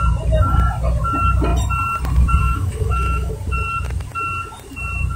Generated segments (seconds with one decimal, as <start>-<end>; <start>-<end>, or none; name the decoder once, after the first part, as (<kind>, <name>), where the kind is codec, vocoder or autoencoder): 2.4-3.3 (autoencoder, DAC-VAE)